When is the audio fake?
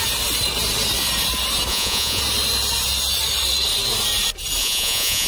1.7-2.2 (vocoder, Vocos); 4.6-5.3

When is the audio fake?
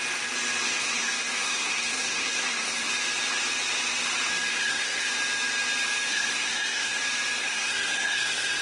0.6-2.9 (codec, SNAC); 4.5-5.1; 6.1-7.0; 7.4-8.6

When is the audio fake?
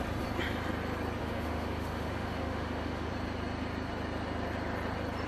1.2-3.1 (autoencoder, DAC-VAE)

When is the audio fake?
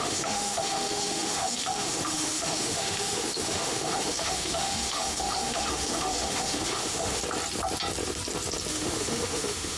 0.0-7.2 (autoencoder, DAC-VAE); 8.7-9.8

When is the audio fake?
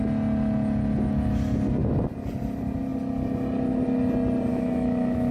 4.5-5.3 (autoencoder, DAC-VAE)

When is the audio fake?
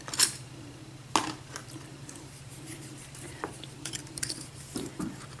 1.9-5.4 (vocoder, BigVGAN v2)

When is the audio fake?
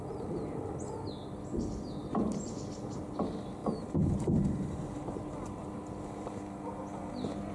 3.6-7.5 (vocoder, BigVGAN v2)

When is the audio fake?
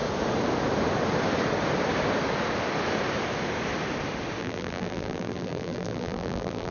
4.4-6.7 (vocoder, BigVGAN v2)